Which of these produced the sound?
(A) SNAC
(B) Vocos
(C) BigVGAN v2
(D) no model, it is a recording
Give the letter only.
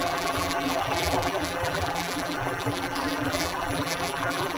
C